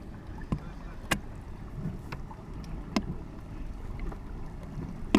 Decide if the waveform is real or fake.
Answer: real